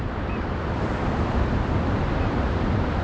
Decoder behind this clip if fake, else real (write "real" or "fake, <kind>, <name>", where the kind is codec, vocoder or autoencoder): fake, vocoder, BigVGAN v2